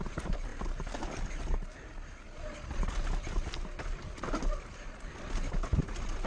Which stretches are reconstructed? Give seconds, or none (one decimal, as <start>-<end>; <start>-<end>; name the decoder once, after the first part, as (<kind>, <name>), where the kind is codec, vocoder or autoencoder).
0.0-0.5 (vocoder, BigVGAN v2); 4.3-6.3